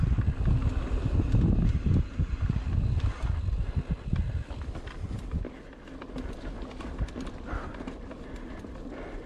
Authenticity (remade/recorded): recorded